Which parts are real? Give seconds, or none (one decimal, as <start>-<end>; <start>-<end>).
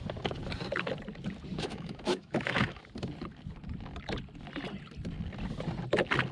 0.0-1.5; 2.8-6.3